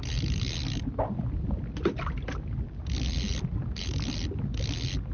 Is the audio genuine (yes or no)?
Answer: yes